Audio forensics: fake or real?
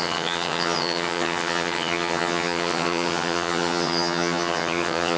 fake